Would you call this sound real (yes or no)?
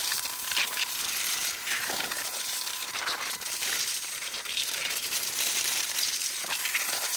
no